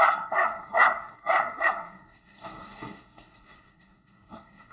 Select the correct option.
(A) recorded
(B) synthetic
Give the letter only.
B